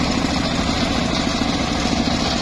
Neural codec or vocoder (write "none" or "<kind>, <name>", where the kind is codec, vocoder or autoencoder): none